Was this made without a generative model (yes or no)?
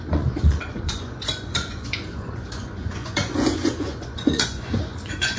no